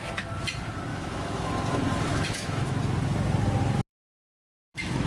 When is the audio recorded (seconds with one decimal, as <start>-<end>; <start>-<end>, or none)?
0.0-0.9; 1.5-2.1; 2.8-3.9